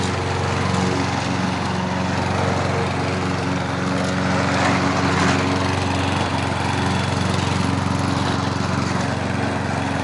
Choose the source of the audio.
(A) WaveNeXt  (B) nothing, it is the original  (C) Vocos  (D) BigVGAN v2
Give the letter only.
B